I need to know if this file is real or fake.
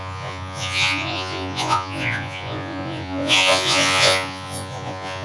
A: fake